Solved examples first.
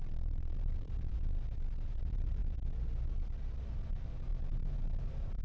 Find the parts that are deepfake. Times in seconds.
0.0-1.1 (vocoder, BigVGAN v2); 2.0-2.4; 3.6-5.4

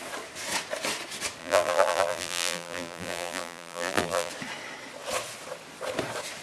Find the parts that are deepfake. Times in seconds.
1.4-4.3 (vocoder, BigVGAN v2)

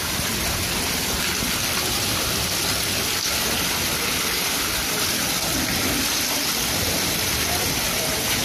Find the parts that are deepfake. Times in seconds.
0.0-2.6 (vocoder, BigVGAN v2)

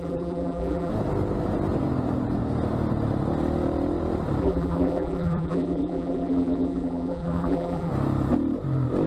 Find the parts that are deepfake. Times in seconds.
0.0-0.9 (vocoder, BigVGAN v2); 4.4-7.9

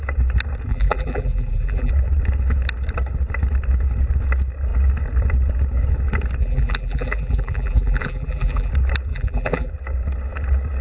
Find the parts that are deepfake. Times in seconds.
0.7-1.9 (vocoder, BigVGAN v2); 6.4-8.7; 9.1-9.7